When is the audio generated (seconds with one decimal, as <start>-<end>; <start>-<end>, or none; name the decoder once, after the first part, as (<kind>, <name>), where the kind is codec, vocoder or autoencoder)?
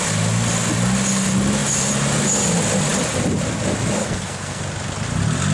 4.0-4.6 (codec, SNAC)